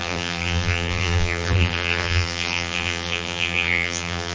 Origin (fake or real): fake